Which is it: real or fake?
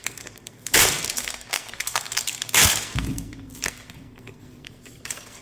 fake